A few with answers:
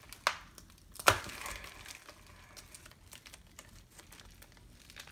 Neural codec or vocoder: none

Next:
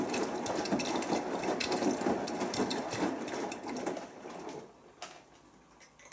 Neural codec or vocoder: none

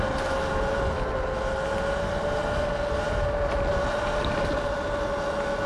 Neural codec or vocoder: none